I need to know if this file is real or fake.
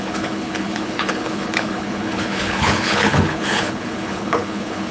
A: fake